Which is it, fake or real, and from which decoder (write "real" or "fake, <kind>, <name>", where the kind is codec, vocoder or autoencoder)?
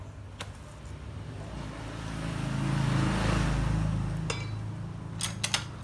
real